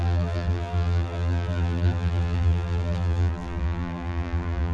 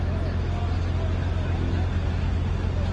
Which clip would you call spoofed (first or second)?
first